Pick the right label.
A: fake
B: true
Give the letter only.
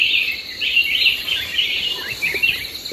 A